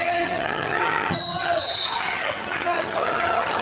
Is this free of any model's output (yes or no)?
no